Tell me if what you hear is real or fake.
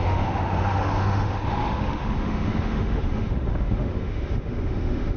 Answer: fake